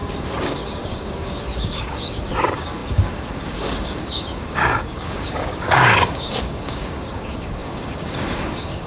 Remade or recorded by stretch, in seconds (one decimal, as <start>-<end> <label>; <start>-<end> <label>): 0.0-8.9 remade